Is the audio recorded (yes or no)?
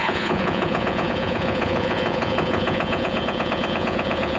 no